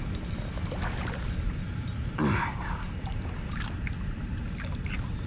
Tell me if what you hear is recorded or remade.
recorded